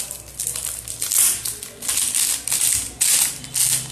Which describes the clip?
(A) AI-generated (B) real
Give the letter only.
B